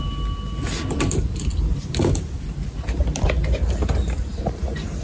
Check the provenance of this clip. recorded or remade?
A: recorded